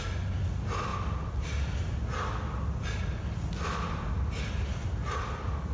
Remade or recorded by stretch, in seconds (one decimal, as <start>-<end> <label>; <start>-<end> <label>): 0.0-5.7 recorded